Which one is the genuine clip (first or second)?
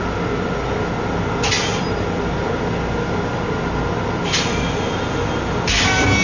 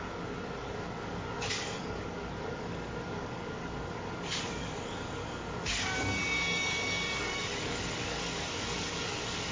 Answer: first